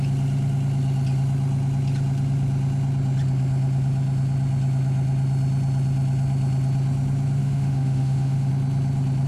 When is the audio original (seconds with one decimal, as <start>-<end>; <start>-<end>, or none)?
0.0-7.4; 8.5-9.3